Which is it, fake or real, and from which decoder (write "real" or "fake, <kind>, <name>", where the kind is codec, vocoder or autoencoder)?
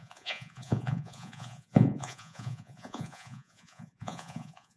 fake, vocoder, Vocos